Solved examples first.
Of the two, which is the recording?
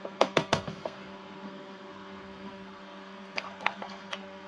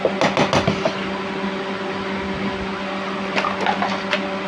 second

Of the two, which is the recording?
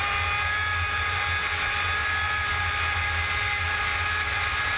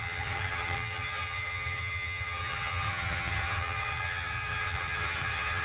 first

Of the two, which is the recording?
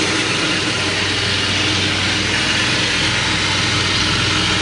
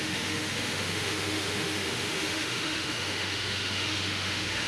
first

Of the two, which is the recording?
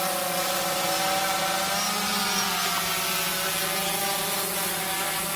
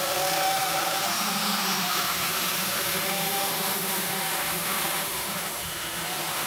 first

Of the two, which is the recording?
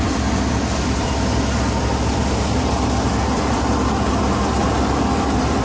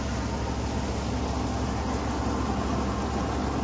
second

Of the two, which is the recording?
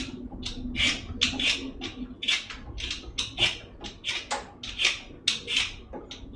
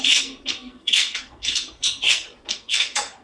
first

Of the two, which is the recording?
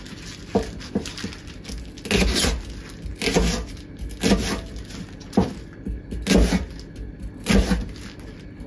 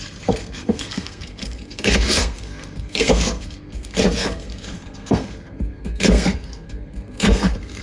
first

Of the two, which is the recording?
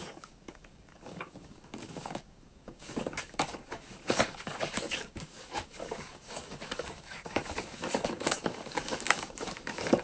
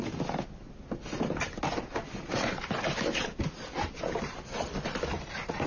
second